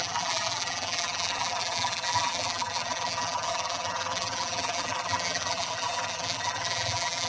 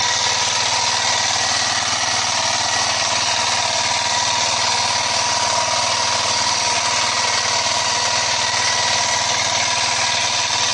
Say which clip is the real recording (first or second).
second